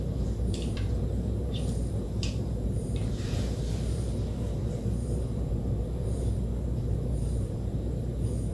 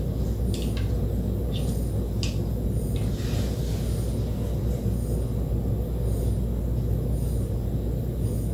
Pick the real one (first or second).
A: second